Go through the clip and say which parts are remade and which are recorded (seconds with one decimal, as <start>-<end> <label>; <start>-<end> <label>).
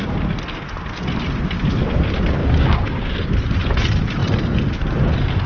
0.0-2.4 recorded; 2.4-3.2 remade; 3.2-5.5 recorded